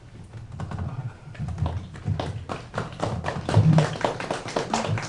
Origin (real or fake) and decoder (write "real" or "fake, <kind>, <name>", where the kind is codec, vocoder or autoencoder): real